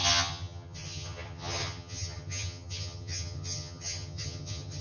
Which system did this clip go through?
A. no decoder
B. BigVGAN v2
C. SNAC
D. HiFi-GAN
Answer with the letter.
D